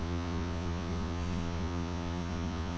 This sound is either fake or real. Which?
fake